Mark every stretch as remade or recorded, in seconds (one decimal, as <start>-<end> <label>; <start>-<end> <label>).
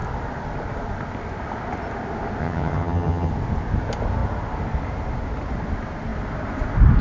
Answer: 0.0-2.4 recorded; 2.4-3.3 remade; 3.3-7.0 recorded